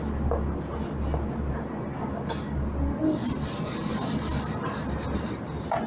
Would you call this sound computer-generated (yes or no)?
no